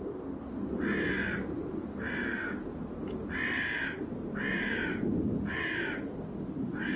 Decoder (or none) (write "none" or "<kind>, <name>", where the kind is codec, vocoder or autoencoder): none